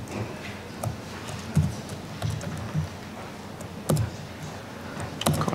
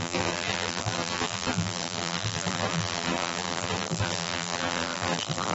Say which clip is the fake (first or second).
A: second